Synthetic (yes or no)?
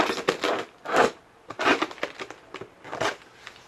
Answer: no